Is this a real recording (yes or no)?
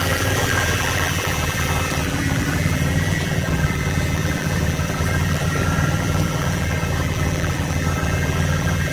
no